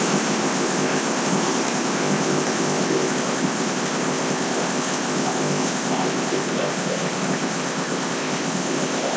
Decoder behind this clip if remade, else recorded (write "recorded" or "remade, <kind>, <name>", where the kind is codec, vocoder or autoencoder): remade, codec, ZipCodec